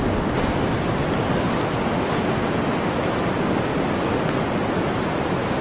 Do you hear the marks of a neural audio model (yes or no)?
no